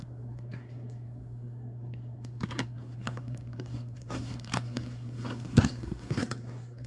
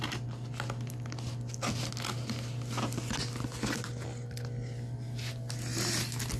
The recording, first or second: second